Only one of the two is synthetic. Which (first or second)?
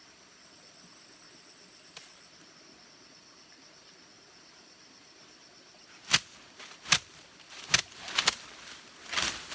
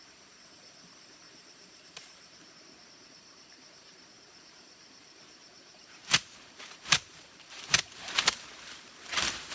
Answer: second